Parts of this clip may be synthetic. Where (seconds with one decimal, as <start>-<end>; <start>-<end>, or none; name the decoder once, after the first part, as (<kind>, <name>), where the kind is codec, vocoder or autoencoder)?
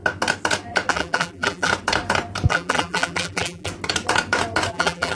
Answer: 0.9-1.7 (vocoder, BigVGAN v2); 2.5-3.7; 4.7-5.2